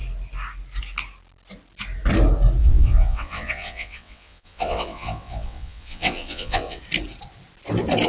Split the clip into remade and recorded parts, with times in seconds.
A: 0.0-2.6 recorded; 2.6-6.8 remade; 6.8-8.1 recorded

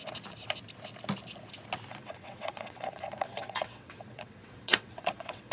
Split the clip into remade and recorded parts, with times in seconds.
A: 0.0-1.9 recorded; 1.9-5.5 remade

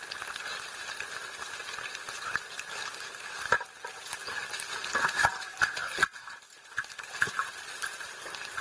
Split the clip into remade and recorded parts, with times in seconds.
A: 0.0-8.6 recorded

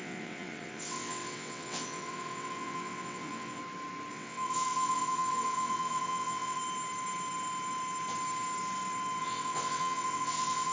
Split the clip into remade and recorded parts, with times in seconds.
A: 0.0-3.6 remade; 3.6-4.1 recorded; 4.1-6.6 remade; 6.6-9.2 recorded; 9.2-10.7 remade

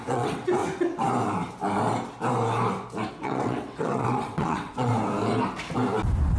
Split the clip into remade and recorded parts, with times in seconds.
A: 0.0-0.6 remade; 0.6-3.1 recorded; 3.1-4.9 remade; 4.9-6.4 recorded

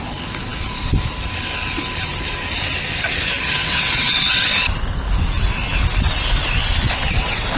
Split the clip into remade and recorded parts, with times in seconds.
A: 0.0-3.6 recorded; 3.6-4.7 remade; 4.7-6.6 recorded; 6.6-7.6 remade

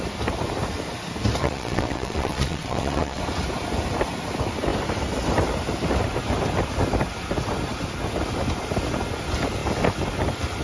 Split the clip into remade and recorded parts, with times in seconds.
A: 0.0-1.4 recorded; 1.4-3.2 remade; 3.2-10.6 recorded